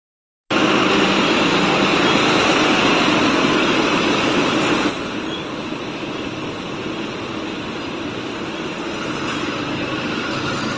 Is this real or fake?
real